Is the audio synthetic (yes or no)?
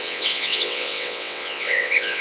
yes